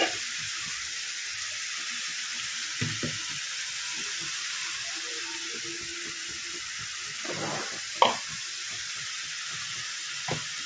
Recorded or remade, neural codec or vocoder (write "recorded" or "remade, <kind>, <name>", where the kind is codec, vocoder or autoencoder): recorded